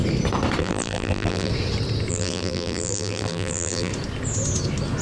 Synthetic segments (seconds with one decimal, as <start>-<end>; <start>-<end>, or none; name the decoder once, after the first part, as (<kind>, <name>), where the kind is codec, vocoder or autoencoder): 0.6-1.5 (vocoder, BigVGAN v2); 2.1-3.9